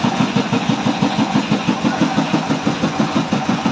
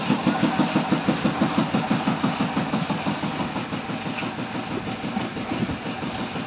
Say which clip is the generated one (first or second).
first